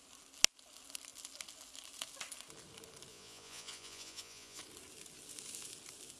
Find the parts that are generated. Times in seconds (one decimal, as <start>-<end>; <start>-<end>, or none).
3.1-4.6